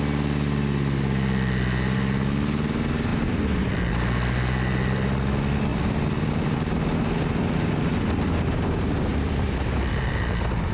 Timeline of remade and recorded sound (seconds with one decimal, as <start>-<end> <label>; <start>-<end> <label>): 0.0-3.1 recorded; 3.1-3.8 remade; 3.8-5.7 recorded; 5.7-6.3 remade; 6.3-9.1 recorded; 9.1-9.9 remade; 9.9-10.7 recorded